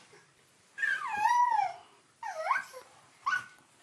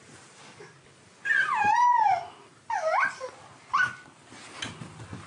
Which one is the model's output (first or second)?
first